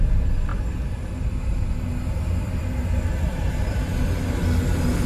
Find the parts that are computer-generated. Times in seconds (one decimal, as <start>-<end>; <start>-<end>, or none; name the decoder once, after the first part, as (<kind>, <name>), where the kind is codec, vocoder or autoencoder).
none